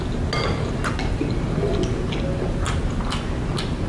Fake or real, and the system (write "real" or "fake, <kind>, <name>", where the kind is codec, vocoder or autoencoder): real